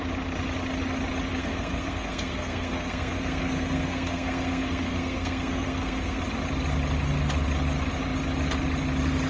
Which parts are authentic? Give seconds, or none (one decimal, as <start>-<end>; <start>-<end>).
0.0-1.4; 6.2-9.3